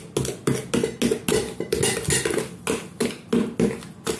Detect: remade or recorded recorded